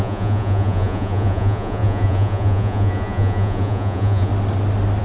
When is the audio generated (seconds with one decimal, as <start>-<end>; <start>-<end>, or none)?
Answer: 0.0-4.3